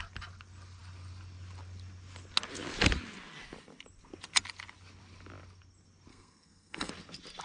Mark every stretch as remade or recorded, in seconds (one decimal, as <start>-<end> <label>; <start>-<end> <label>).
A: 0.0-6.1 recorded; 6.1-6.9 remade; 6.9-7.4 recorded